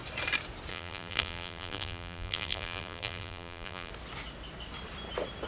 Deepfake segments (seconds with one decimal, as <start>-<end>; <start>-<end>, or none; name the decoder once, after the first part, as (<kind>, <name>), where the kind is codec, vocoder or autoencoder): 0.7-3.9 (vocoder, BigVGAN v2)